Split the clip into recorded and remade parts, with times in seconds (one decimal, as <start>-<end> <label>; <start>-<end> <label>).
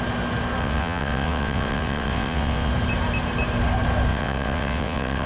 0.0-0.6 recorded; 0.6-2.7 remade; 2.7-4.1 recorded; 4.1-5.3 remade